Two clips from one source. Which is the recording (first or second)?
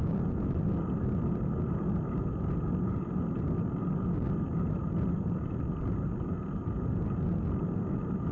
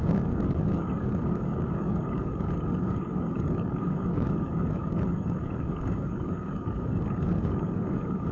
first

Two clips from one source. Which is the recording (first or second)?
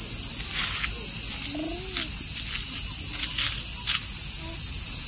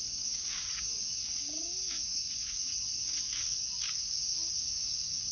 first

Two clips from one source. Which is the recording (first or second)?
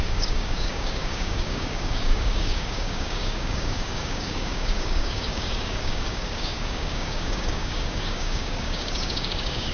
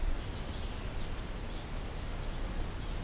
second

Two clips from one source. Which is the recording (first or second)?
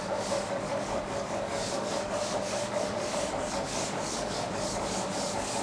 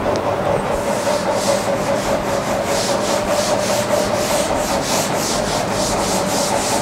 second